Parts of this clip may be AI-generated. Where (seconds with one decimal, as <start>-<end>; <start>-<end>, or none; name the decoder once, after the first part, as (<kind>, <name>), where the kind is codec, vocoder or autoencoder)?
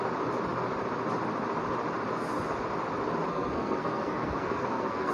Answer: 3.3-5.1 (codec, SNAC)